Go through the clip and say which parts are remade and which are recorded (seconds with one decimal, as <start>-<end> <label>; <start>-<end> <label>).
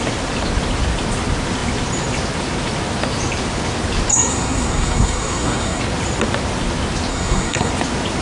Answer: 0.0-4.1 recorded; 4.1-5.8 remade; 5.8-7.1 recorded; 7.1-7.7 remade; 7.7-8.2 recorded